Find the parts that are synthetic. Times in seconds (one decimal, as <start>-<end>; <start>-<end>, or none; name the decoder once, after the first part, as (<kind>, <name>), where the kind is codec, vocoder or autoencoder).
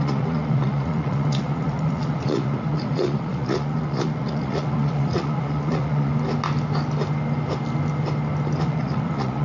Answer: 0.0-6.1 (vocoder, Vocos); 8.6-9.4